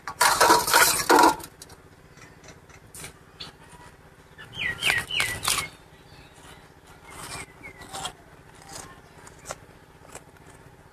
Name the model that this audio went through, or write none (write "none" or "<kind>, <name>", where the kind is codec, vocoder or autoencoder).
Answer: none